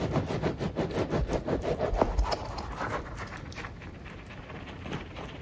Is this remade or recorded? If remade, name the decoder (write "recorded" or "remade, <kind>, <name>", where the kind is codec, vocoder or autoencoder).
recorded